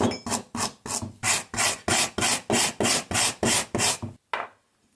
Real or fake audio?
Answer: real